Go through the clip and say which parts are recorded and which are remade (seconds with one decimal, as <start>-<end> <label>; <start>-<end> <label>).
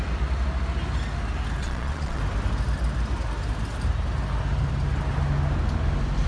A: 0.0-1.6 recorded; 1.6-2.2 remade; 2.2-6.3 recorded